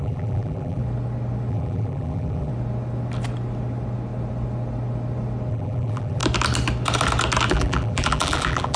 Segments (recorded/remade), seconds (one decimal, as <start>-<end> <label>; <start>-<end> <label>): 0.0-0.8 remade; 0.8-1.5 recorded; 1.5-2.5 remade; 2.5-5.5 recorded; 5.5-6.2 remade; 6.2-7.5 recorded; 7.5-8.8 remade